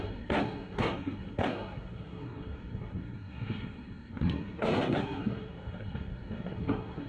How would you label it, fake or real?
fake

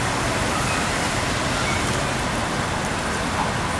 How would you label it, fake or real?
real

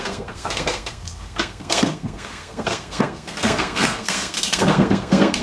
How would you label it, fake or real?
fake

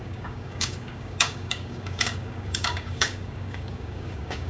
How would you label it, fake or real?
fake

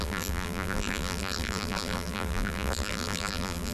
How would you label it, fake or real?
fake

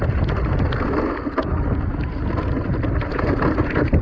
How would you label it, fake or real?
real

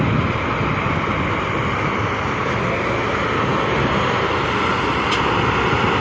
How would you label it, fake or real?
real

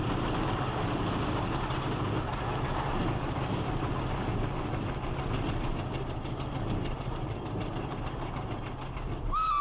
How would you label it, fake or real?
real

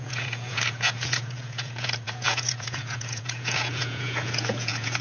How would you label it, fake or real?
fake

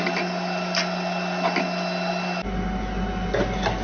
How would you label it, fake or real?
real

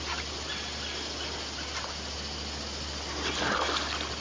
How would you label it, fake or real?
real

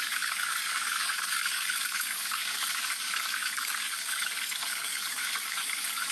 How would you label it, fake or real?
fake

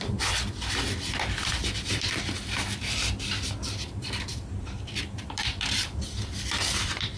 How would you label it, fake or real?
fake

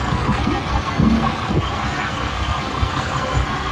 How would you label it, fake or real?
fake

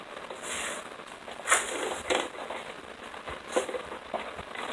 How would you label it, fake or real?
real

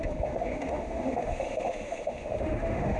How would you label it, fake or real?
fake